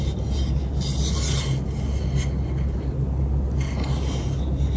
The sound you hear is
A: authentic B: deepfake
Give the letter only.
A